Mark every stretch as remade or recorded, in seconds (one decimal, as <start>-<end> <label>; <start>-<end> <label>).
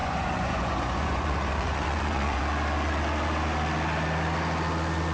0.0-2.4 remade; 2.4-5.1 recorded